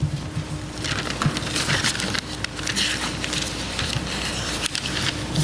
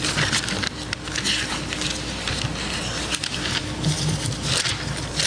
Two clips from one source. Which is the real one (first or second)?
second